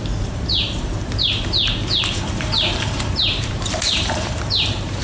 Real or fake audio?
fake